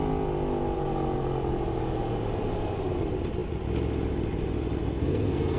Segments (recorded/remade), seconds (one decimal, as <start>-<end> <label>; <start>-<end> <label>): 0.0-4.8 recorded; 4.8-5.6 remade